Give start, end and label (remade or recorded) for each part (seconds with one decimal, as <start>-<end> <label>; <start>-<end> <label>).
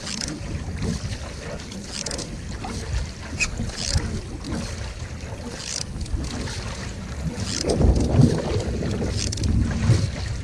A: 0.0-10.4 recorded